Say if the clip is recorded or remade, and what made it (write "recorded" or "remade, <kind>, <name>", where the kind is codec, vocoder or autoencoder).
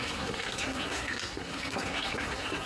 remade, codec, SNAC